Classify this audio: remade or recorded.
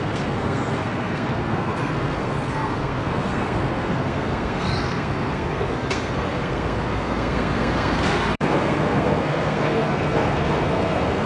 remade